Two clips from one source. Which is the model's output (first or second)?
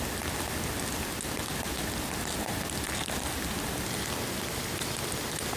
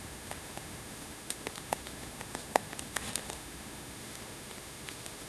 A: second